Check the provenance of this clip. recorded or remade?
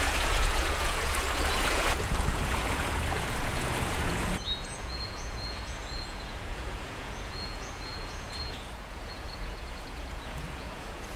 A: remade